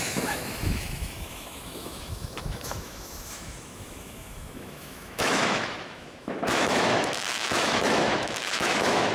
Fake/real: fake